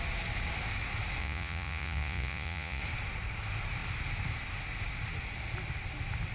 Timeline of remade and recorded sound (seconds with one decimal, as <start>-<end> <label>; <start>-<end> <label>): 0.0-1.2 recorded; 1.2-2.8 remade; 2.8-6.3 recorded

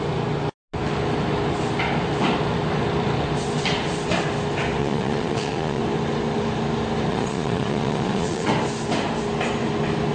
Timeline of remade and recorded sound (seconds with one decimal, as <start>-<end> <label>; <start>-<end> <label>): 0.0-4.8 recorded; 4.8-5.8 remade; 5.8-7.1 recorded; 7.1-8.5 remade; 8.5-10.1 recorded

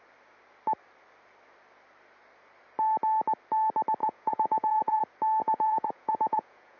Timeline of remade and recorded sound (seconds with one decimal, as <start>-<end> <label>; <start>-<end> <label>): 0.0-4.0 recorded; 4.0-5.0 remade; 5.0-5.4 recorded; 5.4-6.8 remade

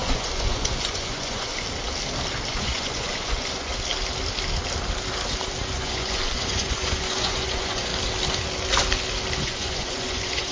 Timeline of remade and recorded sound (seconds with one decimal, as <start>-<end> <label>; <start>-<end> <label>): 0.0-1.5 remade; 1.5-2.5 recorded; 2.5-3.7 remade; 3.7-5.7 recorded; 5.7-7.9 remade; 7.9-9.4 recorded; 9.4-10.5 remade

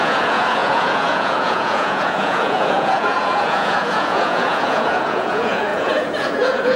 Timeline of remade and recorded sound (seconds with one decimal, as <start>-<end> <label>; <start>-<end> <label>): 0.0-6.8 remade

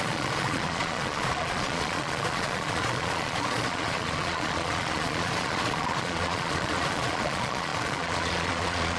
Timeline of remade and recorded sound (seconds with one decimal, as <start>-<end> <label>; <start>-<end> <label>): 0.0-9.0 remade